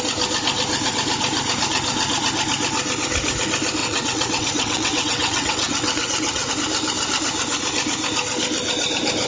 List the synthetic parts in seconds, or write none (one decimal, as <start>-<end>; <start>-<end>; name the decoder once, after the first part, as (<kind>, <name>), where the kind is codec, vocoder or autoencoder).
3.8-6.5 (vocoder, WaveNeXt)

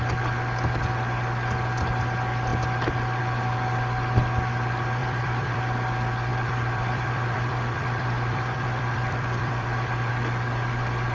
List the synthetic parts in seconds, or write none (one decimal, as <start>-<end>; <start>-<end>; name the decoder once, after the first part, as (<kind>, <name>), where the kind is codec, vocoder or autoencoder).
5.0-5.6 (vocoder, BigVGAN v2); 6.3-10.1

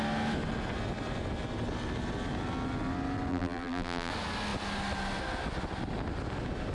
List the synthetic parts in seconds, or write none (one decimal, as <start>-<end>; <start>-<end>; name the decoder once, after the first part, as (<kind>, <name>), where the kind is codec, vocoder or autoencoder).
3.3-4.1 (vocoder, BigVGAN v2)